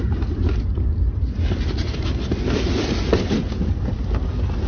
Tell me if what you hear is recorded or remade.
recorded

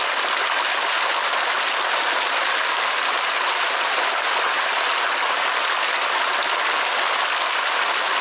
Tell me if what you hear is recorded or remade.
recorded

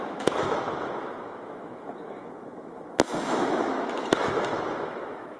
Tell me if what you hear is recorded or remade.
remade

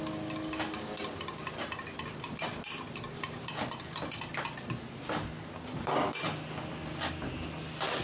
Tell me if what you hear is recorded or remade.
recorded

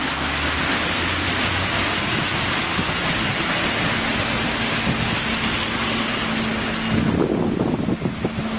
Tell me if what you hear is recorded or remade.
recorded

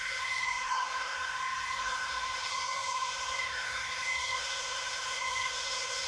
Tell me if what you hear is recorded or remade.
remade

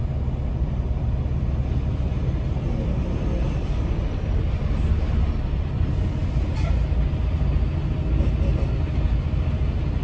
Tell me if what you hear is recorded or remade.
recorded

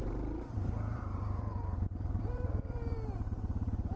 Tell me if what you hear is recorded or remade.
remade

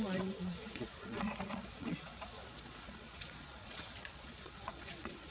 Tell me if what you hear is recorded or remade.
remade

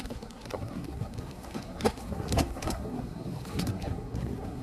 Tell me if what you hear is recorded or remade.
remade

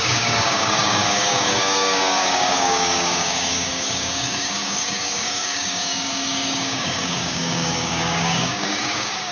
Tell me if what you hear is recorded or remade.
remade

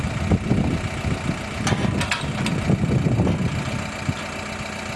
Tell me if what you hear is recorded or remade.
recorded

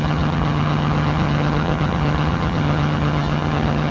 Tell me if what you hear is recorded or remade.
remade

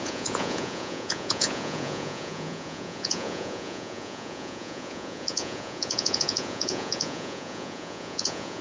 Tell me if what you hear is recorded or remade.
remade